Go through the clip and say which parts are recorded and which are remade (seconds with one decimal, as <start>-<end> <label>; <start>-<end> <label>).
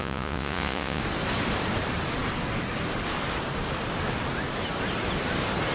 0.0-1.0 remade; 1.0-5.7 recorded